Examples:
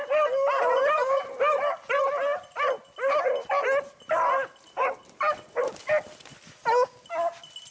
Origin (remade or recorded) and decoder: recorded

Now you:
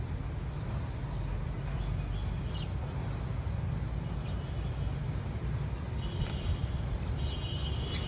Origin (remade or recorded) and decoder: recorded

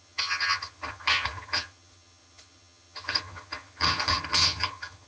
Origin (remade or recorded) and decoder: remade, vocoder, HiFi-GAN